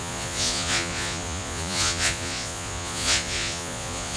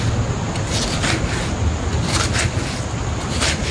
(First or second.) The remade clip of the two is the first